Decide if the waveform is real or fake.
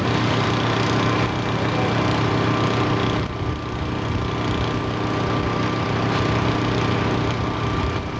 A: real